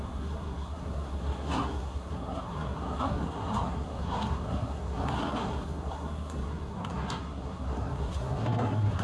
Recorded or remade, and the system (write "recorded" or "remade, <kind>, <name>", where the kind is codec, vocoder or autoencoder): remade, codec, SNAC